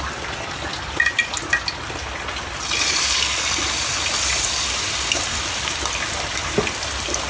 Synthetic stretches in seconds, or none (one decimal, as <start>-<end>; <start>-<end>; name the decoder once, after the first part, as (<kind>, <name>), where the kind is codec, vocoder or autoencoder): 0.0-0.7 (vocoder, BigVGAN v2); 4.7-7.3